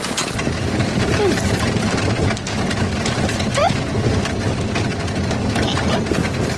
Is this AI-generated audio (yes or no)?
no